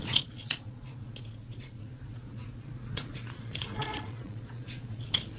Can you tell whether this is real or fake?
fake